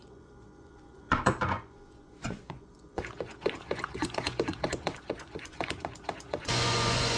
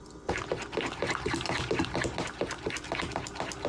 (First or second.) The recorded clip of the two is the second